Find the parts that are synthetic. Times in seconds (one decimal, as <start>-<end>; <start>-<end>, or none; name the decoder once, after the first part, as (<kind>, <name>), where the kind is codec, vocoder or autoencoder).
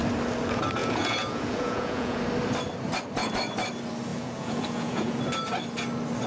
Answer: 0.8-2.2 (vocoder, Vocos); 4.1-5.2